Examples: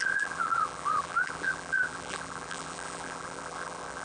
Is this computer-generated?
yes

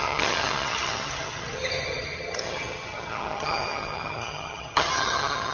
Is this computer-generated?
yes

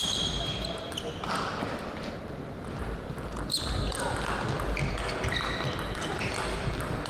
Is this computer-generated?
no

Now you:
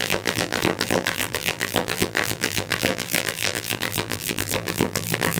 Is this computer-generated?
yes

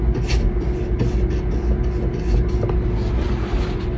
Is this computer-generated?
no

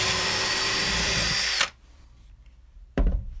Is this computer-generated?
yes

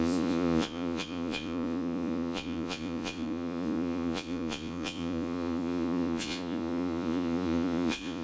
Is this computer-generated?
yes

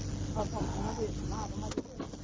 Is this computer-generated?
no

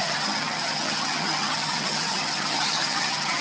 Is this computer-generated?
yes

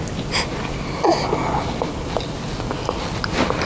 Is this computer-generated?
no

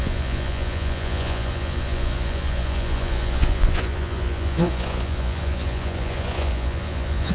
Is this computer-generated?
yes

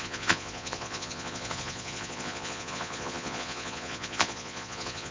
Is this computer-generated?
yes